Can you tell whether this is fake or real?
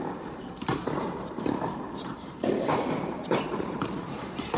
fake